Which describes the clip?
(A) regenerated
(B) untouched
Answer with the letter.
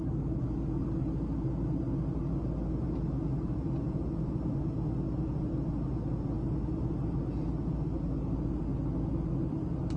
B